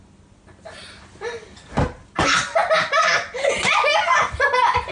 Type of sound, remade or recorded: recorded